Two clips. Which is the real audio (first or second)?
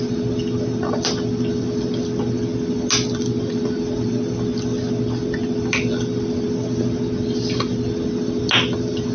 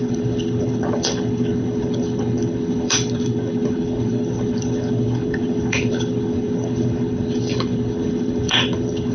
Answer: first